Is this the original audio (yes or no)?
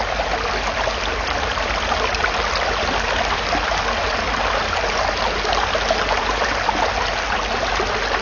yes